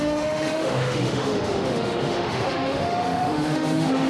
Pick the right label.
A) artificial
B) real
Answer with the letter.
A